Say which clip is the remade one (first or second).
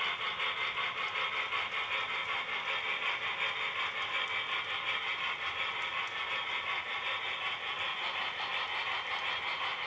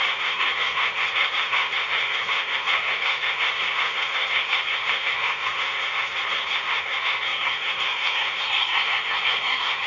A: second